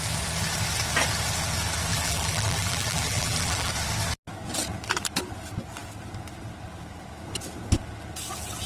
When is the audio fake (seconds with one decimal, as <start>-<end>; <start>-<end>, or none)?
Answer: 1.9-3.7